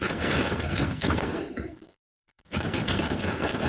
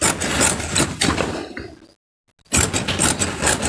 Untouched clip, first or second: second